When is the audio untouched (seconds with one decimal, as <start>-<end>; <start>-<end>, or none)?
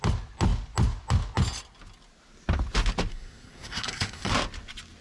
0.0-3.1; 4.3-5.0